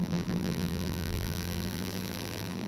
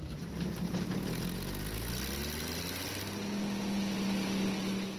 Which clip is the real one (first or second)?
second